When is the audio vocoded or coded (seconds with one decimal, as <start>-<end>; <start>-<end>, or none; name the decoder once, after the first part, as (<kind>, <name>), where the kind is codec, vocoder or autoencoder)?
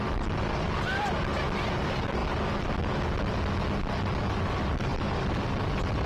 0.0-2.2 (vocoder, BigVGAN v2); 4.2-6.1